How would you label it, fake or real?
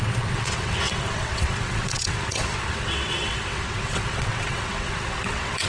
fake